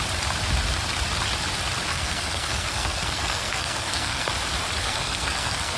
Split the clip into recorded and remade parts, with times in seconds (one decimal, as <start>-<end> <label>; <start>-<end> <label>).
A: 0.0-1.9 recorded; 1.9-4.3 remade; 4.3-4.8 recorded; 4.8-5.8 remade